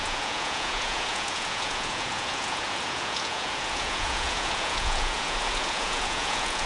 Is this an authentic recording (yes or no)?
no